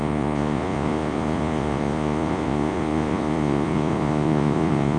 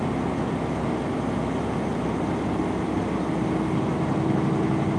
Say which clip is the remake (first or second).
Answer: first